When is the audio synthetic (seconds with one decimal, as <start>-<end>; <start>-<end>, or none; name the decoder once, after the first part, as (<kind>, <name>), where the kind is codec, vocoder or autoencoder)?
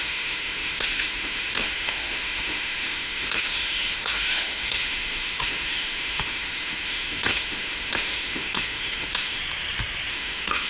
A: 0.0-9.4 (autoencoder, DAC-VAE); 10.1-10.7